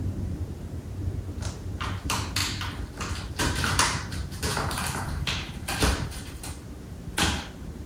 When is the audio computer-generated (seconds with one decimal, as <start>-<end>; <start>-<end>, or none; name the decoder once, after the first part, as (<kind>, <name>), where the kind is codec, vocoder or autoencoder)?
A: 0.0-2.4 (vocoder, BigVGAN v2); 3.3-7.9